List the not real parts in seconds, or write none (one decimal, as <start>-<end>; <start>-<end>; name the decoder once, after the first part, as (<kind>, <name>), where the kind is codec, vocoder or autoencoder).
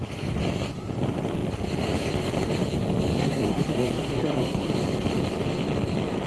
3.2-4.7 (codec, SNAC)